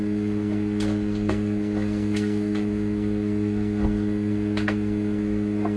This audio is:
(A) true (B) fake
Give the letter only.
B